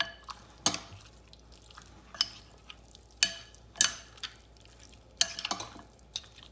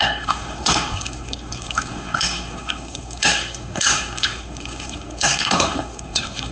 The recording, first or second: first